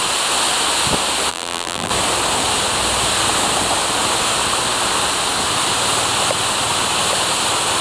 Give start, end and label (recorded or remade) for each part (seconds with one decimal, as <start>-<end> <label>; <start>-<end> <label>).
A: 0.0-1.3 recorded; 1.3-1.9 remade; 1.9-7.8 recorded